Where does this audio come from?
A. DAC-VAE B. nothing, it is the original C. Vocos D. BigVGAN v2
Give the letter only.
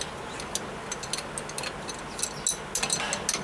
B